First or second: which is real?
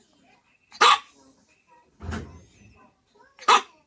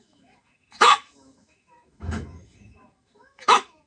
first